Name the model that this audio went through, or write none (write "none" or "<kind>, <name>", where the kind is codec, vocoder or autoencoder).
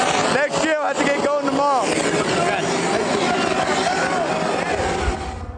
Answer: none